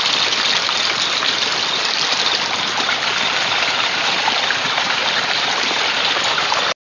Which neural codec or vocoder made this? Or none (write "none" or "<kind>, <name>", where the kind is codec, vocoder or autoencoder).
none